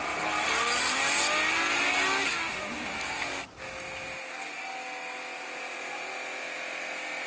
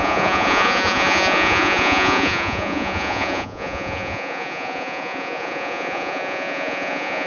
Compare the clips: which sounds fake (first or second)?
second